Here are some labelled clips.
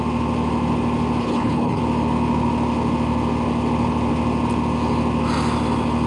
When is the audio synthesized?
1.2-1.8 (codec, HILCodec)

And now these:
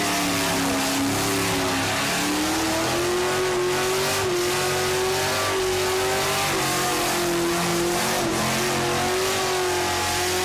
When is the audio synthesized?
7.7-8.4 (vocoder, BigVGAN v2)

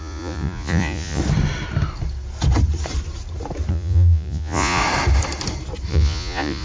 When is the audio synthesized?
0.0-1.2 (vocoder, Vocos); 3.7-4.8; 5.9-6.6